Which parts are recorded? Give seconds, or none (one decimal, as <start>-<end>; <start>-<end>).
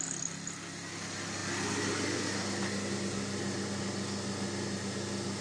0.0-5.4